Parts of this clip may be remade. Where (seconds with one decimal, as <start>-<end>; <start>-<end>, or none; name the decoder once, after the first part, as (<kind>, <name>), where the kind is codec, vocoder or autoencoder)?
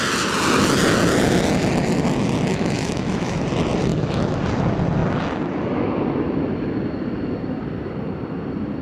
2.5-3.4 (autoencoder, DAC-VAE); 3.9-4.4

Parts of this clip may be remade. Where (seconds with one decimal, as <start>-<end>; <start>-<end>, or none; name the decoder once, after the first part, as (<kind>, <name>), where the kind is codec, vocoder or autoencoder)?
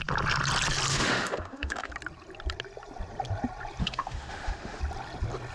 0.9-1.9 (autoencoder, DAC-VAE); 3.8-4.8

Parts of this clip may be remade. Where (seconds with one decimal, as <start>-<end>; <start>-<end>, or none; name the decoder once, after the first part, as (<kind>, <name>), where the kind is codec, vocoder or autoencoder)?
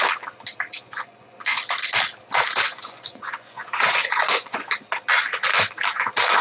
0.7-1.6 (vocoder, Vocos); 2.7-4.8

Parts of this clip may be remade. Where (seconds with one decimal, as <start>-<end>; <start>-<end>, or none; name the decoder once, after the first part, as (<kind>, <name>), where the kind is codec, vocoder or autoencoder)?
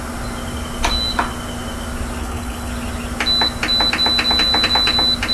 2.2-2.7 (codec, HILCodec)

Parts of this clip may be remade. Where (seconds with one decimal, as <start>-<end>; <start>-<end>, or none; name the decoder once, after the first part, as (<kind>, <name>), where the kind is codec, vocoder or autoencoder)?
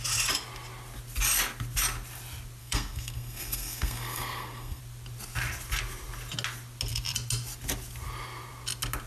2.6-4.8 (codec, SNAC)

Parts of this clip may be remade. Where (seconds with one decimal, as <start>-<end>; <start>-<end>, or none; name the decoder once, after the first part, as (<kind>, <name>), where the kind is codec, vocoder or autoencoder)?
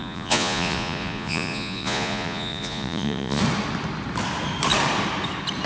0.0-3.4 (vocoder, Vocos)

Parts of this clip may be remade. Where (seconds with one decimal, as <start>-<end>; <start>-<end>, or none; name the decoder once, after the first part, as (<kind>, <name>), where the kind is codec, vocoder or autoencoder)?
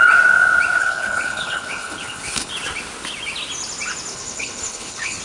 0.8-2.5 (codec, HILCodec); 4.1-5.2